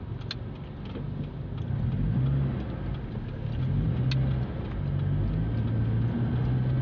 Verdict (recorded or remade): recorded